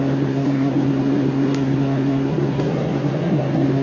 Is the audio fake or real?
fake